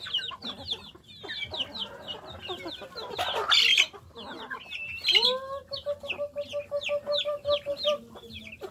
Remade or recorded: recorded